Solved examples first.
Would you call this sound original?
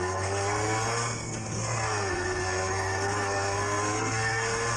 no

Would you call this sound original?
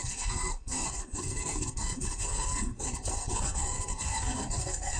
no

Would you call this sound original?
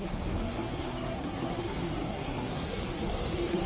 no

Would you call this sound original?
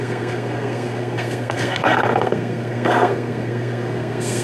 no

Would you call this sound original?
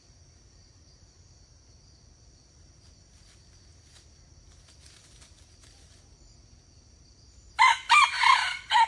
yes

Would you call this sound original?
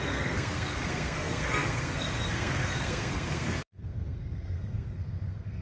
no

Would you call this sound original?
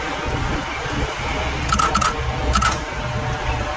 yes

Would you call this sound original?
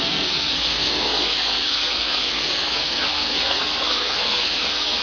no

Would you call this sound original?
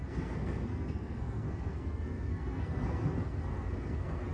no